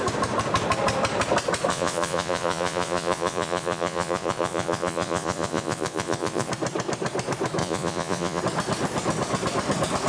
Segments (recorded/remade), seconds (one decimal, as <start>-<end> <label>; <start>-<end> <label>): 0.0-1.7 recorded; 1.7-6.5 remade; 6.5-7.6 recorded; 7.6-8.4 remade; 8.4-10.1 recorded